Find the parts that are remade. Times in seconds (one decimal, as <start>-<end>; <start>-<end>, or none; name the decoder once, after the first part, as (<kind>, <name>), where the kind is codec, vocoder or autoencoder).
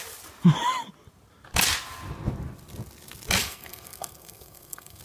3.4-5.0 (codec, SNAC)